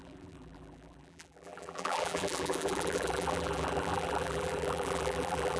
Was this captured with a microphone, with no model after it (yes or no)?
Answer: no